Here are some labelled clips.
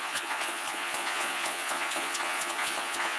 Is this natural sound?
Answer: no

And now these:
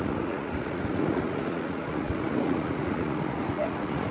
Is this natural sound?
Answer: no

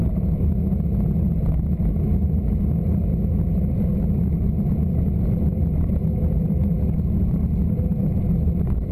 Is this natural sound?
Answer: yes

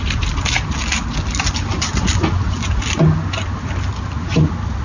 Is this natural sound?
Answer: yes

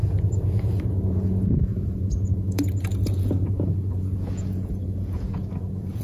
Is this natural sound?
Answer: no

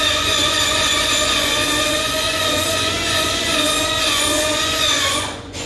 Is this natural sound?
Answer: no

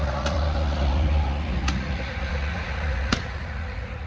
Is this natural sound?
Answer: no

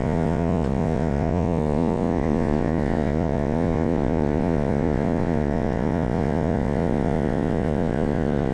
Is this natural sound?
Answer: no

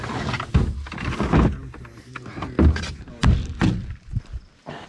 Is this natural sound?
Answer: yes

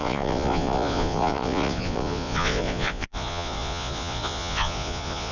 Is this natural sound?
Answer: no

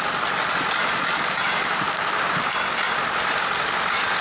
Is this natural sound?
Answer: yes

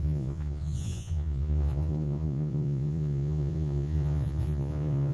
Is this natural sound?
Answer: no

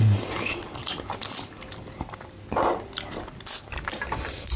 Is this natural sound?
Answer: yes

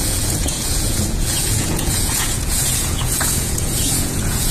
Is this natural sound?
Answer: no